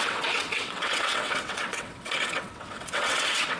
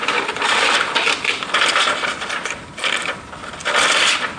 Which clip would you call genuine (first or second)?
second